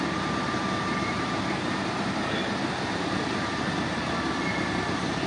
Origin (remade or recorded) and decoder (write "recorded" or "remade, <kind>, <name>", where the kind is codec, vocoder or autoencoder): remade, vocoder, BigVGAN v2